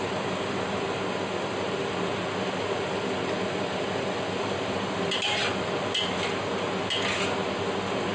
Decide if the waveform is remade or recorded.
recorded